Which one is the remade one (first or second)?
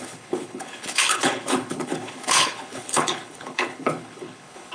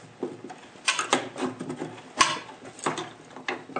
first